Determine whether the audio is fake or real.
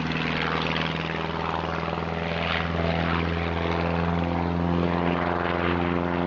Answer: real